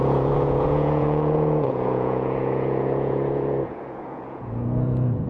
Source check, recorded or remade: remade